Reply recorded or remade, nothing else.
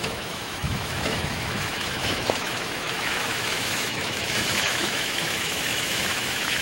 remade